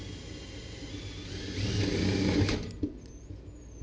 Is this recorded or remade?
recorded